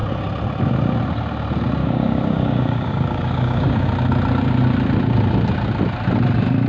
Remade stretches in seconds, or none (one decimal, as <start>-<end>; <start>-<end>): 1.8-3.9

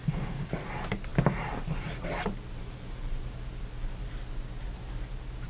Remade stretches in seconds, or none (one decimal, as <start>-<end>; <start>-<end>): 0.0-0.5

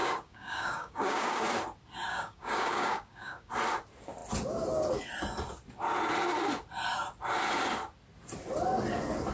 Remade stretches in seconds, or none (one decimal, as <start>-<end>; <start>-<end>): 0.0-1.4; 2.1-3.5

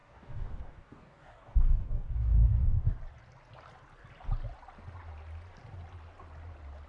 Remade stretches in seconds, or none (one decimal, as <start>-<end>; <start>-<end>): 0.0-3.0

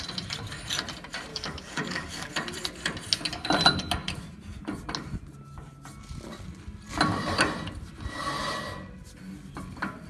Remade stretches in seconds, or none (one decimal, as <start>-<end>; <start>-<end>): 1.3-2.3